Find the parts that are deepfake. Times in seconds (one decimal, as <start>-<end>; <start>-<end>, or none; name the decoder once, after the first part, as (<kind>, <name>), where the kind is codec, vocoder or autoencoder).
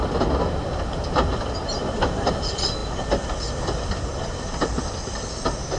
none